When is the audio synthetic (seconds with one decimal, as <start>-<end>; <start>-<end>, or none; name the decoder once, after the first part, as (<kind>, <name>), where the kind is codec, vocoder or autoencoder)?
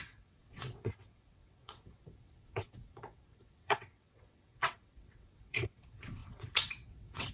0.0-7.3 (vocoder, WaveNeXt)